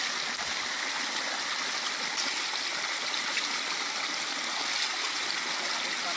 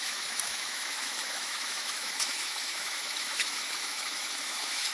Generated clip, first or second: second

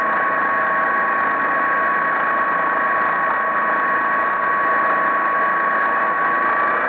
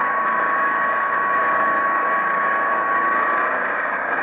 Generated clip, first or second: second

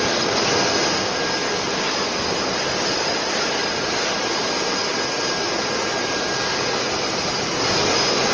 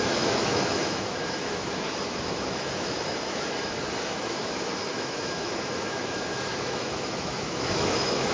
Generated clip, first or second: second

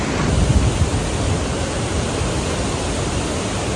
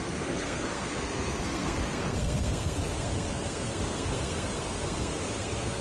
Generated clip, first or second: second